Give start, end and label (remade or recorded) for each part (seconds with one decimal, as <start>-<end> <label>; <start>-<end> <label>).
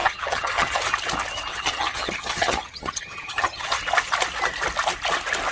0.0-0.8 remade; 0.8-1.5 recorded; 1.5-3.8 remade; 3.8-5.5 recorded